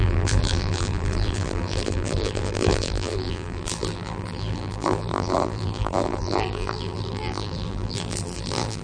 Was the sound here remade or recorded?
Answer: remade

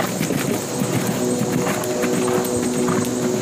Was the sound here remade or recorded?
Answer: recorded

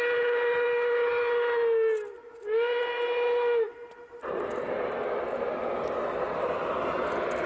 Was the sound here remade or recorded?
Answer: recorded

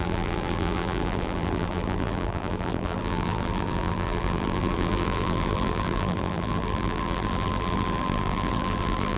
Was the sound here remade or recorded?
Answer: remade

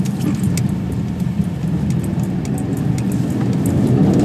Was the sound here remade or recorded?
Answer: recorded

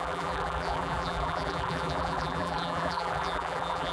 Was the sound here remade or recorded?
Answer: remade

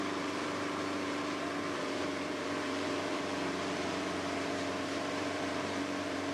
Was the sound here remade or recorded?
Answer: remade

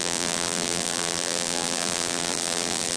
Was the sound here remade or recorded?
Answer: remade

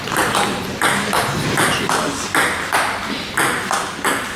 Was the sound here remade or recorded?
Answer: recorded